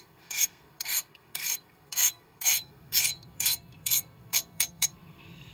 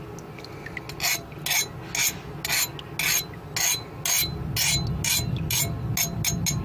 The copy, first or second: first